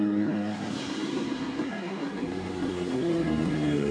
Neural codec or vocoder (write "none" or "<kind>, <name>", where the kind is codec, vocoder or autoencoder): codec, SNAC